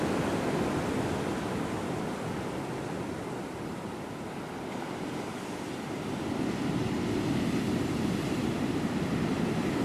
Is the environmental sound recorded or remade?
recorded